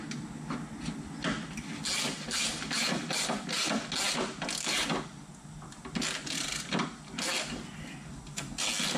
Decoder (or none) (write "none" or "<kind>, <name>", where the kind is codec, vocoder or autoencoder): none